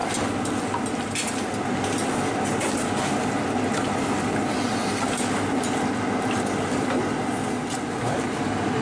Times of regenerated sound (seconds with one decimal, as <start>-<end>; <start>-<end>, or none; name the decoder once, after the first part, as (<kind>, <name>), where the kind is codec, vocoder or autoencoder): none